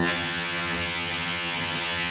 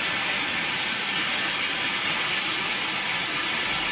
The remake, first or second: first